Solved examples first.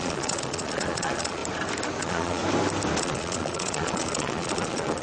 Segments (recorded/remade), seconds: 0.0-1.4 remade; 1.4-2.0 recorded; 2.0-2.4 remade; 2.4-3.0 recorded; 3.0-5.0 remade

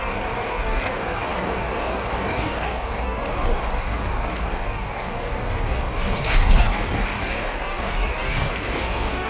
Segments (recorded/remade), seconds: 0.0-9.3 remade

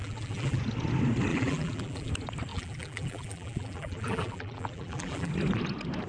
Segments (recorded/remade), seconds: 0.0-0.6 remade; 0.6-1.3 recorded; 1.3-2.1 remade; 2.1-2.5 recorded; 2.5-5.3 remade; 5.3-6.1 recorded